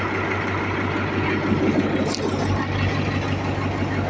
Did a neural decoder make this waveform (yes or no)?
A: no